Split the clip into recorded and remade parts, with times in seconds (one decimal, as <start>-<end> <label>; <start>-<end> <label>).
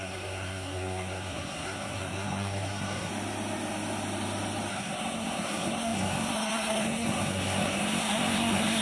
0.0-3.1 remade; 3.1-4.7 recorded; 4.7-8.8 remade